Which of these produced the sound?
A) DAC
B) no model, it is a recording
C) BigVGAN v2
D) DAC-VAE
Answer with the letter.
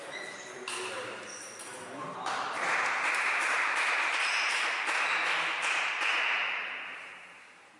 C